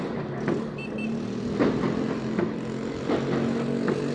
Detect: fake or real real